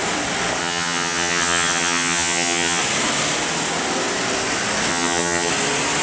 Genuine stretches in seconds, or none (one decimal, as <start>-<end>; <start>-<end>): 0.0-0.6; 2.8-4.9; 5.5-6.0